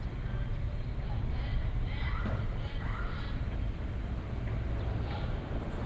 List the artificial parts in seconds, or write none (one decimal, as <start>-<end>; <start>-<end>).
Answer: 0.0-5.9